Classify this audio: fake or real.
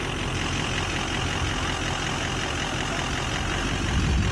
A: real